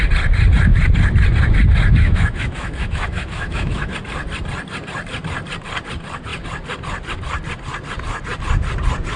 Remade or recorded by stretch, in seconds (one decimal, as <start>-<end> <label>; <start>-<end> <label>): 0.0-1.9 recorded; 1.9-3.9 remade; 3.9-9.2 recorded